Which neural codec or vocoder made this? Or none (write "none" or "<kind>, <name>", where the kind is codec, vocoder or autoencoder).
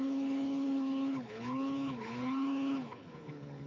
codec, HILCodec